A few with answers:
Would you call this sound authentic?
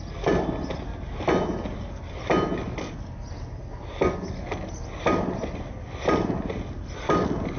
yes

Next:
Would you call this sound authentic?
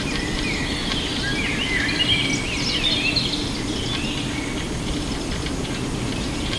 yes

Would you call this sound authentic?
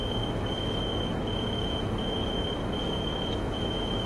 no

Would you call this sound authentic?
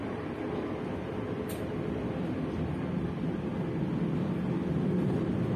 yes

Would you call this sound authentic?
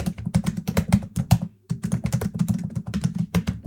no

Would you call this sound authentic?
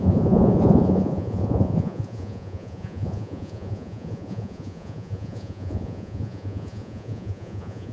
no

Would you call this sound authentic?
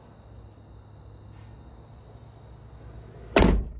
yes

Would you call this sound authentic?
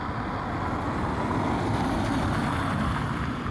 yes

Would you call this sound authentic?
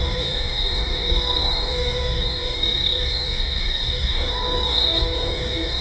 no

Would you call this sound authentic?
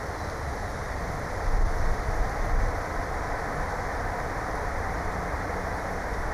yes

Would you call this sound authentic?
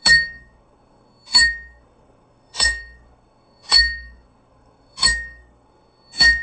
no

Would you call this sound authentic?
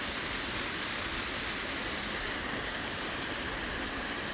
yes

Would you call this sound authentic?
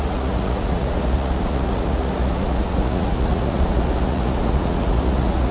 no